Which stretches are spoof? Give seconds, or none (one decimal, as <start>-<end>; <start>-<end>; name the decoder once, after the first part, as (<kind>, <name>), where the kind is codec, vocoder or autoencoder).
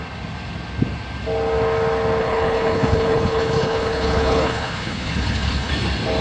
2.2-5.7 (codec, HILCodec)